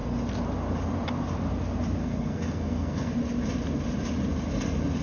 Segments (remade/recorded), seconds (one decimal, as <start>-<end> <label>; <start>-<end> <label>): 0.0-2.0 recorded; 2.0-3.1 remade; 3.1-5.0 recorded